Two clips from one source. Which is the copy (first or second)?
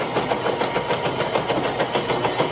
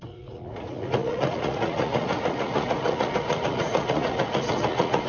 second